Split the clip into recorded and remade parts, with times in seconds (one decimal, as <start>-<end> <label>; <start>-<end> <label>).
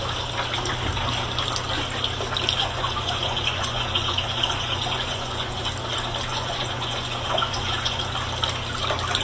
0.0-2.6 recorded; 2.6-5.6 remade; 5.6-6.3 recorded; 6.3-8.0 remade; 8.0-9.2 recorded